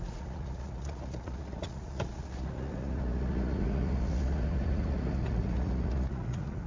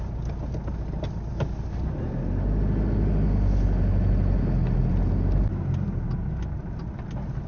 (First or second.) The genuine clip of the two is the second